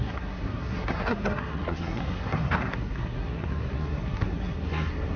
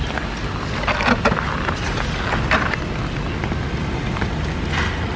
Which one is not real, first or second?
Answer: first